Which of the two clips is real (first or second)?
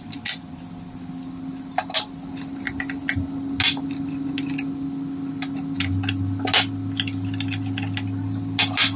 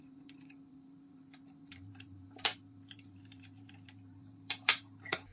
first